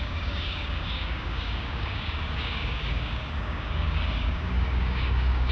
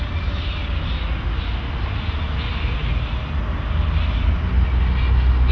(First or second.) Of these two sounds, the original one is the second